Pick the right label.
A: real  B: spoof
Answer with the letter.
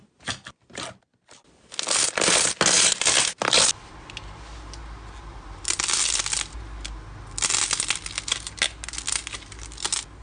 A